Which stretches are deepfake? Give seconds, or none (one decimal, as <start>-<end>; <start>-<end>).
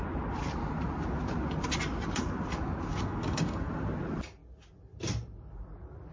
2.9-3.6